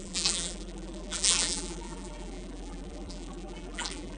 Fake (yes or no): yes